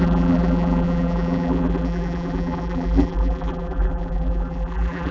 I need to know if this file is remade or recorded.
remade